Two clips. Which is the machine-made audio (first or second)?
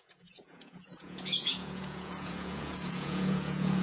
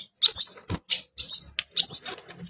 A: first